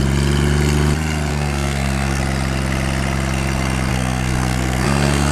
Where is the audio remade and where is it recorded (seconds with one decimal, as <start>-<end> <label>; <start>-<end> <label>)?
0.0-1.3 recorded; 1.3-2.2 remade; 2.2-3.9 recorded; 3.9-5.3 remade